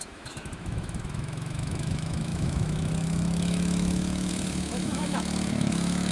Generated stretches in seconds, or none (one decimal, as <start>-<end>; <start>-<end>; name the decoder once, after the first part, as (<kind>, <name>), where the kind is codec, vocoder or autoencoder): 0.0-6.1 (autoencoder, DAC-VAE)